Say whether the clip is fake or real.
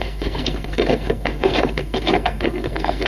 fake